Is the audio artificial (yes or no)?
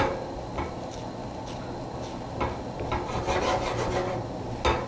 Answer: no